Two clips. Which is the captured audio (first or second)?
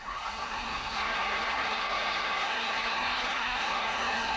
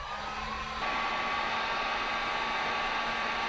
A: second